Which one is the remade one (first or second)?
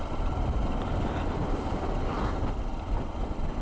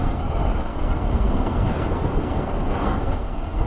second